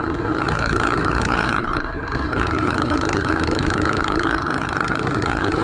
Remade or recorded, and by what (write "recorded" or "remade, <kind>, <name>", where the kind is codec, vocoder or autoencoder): remade, codec, SNAC